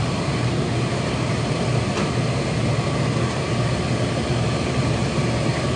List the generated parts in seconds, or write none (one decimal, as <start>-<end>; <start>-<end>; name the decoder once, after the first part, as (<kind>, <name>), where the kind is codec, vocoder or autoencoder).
0.0-3.5 (vocoder, BigVGAN v2)